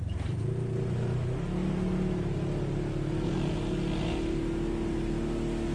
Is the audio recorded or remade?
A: recorded